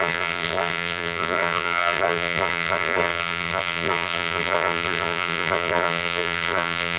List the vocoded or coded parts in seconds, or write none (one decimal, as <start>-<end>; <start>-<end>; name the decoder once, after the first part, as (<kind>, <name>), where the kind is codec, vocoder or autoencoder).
0.0-7.0 (vocoder, BigVGAN v2)

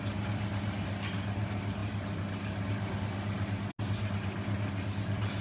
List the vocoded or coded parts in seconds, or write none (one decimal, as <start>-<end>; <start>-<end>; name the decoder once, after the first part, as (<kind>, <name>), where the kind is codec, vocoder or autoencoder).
none

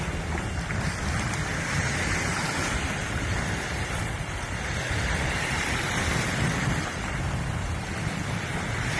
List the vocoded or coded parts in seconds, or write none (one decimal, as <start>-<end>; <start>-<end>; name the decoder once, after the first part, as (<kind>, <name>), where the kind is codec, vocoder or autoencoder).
3.0-7.8 (vocoder, BigVGAN v2)